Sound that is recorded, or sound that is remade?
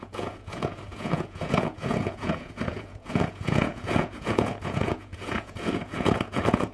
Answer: remade